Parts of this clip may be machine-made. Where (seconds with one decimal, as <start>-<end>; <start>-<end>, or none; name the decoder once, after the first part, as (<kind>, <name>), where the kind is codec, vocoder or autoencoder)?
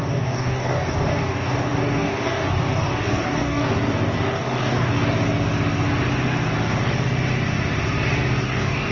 0.0-4.9 (codec, DAC); 8.4-8.9